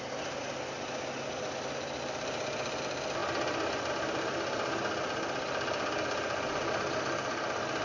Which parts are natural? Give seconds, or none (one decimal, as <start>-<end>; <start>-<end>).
0.0-7.8